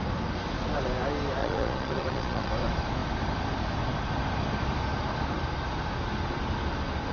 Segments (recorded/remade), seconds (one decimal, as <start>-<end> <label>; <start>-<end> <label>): 0.0-1.4 recorded; 1.4-2.5 remade; 2.5-7.1 recorded